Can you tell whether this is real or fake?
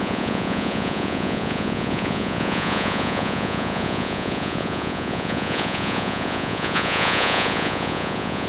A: fake